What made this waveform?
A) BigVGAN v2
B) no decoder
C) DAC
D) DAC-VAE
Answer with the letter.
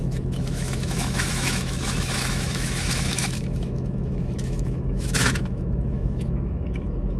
D